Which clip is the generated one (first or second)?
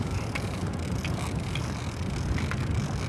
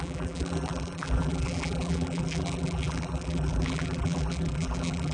second